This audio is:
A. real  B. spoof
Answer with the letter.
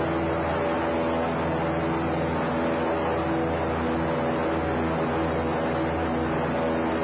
A